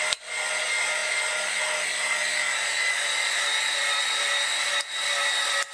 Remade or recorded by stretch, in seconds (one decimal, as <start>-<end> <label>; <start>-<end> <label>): 0.0-5.7 recorded